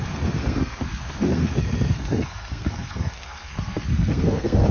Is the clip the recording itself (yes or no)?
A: no